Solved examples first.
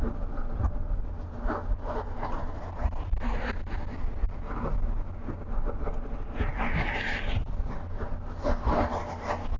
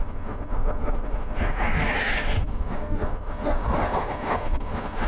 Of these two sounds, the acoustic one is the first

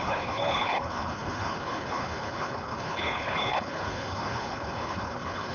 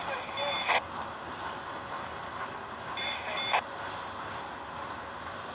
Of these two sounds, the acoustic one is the second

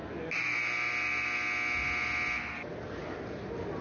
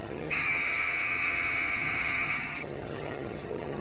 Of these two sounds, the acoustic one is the first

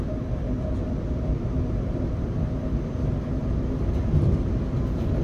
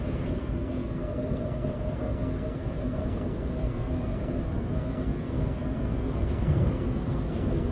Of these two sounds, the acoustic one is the first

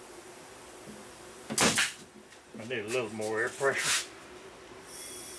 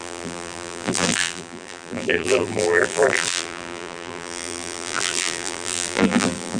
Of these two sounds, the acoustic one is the first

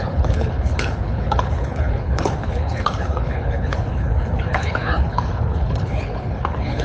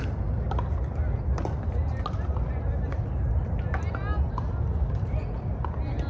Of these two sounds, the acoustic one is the second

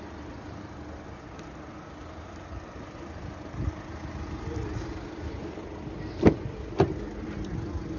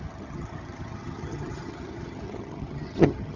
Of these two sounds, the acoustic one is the first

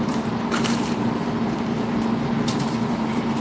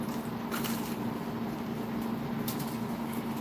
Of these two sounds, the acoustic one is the second